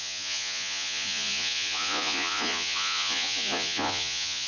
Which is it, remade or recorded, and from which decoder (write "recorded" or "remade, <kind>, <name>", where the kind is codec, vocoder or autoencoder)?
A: remade, vocoder, Vocos